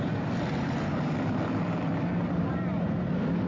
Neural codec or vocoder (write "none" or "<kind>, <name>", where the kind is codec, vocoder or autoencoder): vocoder, BigVGAN v2